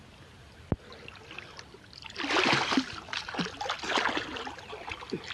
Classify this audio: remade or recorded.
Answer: recorded